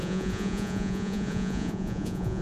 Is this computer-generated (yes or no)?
yes